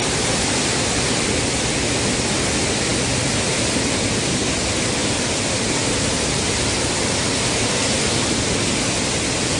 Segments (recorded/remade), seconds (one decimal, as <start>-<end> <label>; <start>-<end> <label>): 0.0-9.6 recorded